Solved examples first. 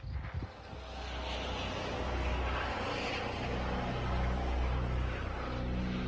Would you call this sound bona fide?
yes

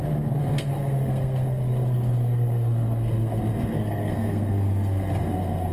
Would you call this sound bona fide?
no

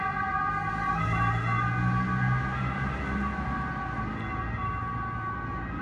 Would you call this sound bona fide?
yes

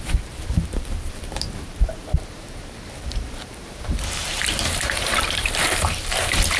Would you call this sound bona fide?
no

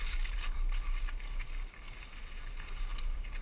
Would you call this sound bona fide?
yes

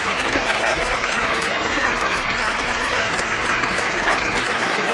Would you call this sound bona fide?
no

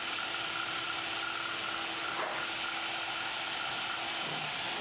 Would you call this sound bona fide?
yes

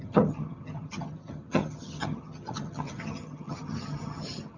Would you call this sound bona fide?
no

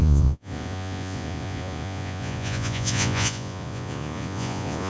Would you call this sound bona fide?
no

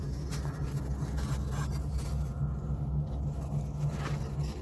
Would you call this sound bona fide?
yes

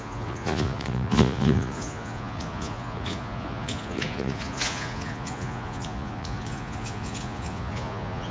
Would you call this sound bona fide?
no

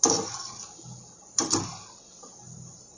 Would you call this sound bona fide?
yes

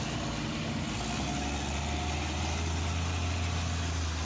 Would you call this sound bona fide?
yes